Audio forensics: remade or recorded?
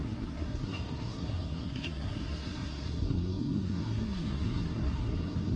remade